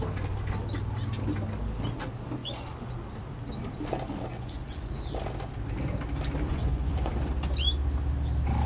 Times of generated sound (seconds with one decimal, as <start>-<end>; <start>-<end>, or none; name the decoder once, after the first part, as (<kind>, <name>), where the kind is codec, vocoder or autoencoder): 2.4-2.9 (vocoder, Vocos); 4.3-4.9; 6.5-7.1